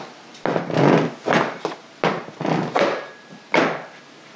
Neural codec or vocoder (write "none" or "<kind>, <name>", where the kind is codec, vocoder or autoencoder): none